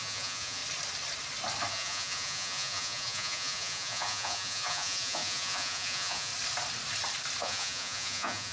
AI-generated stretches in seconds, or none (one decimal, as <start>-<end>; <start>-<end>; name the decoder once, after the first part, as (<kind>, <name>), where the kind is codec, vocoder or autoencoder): 0.0-0.6 (vocoder, Vocos); 1.7-6.3; 7.4-8.5